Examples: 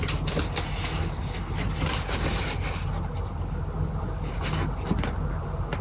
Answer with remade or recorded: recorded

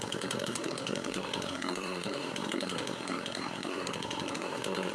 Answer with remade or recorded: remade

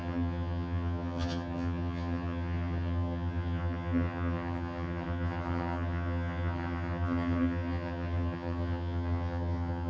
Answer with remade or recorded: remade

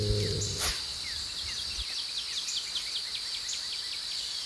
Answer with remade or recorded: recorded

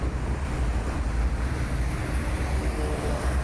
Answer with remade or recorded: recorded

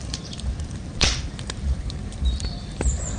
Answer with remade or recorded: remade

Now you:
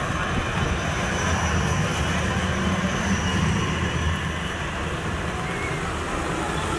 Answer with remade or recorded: recorded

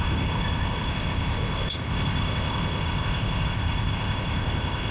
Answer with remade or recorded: remade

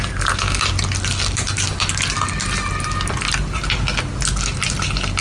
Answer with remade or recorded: recorded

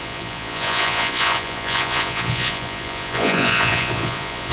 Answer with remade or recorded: remade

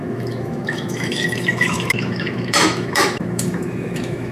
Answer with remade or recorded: remade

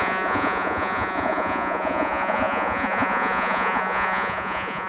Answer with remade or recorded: remade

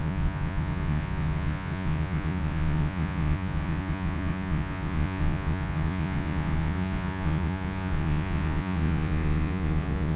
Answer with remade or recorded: remade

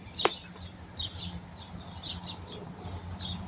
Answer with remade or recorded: recorded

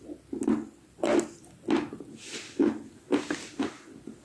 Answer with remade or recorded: recorded